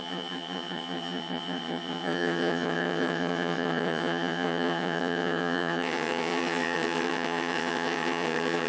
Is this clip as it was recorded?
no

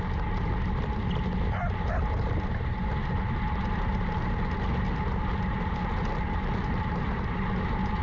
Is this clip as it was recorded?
yes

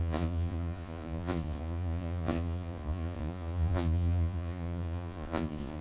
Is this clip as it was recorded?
no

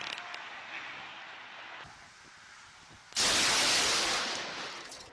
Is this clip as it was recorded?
yes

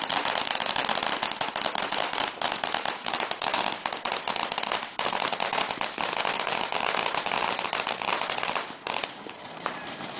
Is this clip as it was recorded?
no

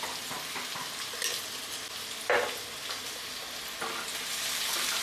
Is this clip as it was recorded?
yes